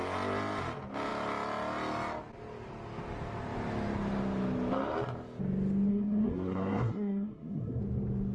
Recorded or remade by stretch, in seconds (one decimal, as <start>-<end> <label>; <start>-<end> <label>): 0.0-5.9 recorded; 5.9-7.8 remade; 7.8-8.3 recorded